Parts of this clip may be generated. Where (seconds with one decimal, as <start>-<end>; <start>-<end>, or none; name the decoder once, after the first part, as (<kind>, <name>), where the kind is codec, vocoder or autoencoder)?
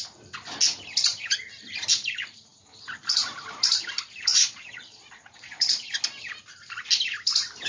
4.3-5.9 (vocoder, Vocos)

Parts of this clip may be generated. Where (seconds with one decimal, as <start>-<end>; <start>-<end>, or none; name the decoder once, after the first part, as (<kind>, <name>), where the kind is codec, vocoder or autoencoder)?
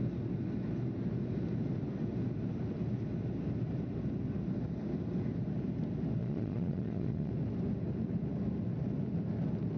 6.2-7.3 (vocoder, Vocos)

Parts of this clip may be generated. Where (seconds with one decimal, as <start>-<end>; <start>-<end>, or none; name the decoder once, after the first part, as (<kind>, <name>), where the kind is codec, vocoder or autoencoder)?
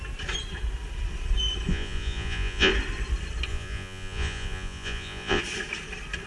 1.7-2.7 (vocoder, Vocos); 3.5-5.4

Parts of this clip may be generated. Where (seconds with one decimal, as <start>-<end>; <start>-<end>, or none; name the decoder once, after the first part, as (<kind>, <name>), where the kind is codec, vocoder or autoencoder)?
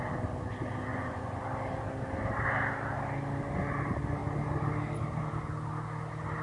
0.9-1.4 (vocoder, Vocos)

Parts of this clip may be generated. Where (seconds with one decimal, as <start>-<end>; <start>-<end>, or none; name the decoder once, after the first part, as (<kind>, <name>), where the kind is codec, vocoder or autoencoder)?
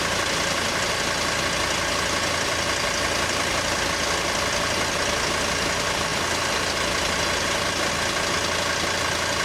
none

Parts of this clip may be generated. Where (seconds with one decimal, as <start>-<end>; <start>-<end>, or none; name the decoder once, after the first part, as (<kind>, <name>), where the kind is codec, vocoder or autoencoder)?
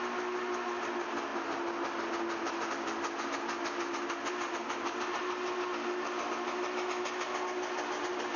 none